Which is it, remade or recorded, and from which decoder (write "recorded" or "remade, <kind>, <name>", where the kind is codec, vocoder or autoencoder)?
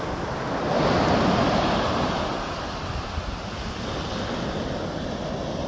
recorded